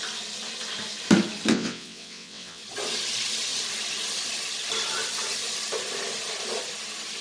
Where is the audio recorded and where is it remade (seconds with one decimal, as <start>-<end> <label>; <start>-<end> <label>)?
0.0-1.5 recorded; 1.5-2.6 remade; 2.6-7.2 recorded